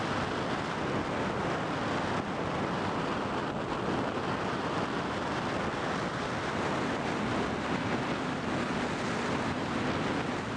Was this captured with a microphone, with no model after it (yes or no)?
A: yes